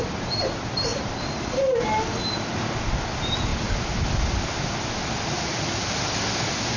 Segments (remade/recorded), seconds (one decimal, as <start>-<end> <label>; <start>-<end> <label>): 0.0-0.9 recorded; 0.9-1.6 remade; 1.6-6.8 recorded